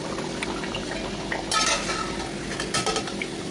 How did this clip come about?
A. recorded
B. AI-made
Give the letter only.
A